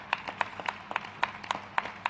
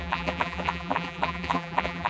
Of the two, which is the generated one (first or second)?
second